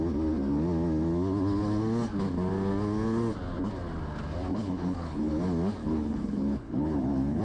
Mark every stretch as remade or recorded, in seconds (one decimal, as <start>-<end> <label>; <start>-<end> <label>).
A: 0.0-4.5 recorded; 4.5-5.3 remade; 5.3-5.8 recorded; 5.8-7.4 remade